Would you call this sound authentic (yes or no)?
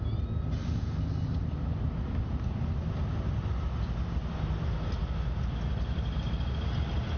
yes